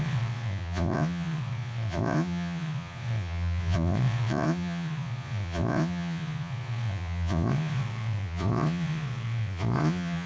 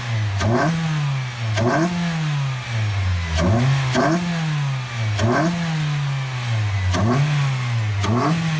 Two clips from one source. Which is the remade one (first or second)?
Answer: first